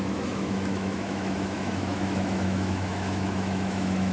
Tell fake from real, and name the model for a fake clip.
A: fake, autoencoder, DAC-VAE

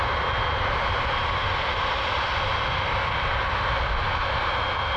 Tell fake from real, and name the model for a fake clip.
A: real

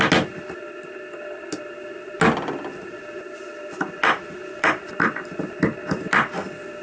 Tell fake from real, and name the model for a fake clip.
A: real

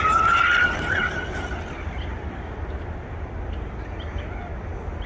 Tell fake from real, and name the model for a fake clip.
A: real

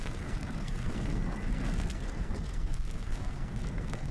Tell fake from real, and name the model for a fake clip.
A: fake, codec, SNAC